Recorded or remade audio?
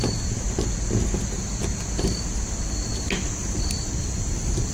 recorded